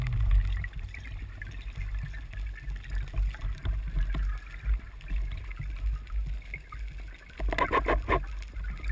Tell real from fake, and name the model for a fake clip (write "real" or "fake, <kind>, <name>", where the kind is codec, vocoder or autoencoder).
real